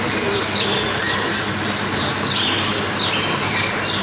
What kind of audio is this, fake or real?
real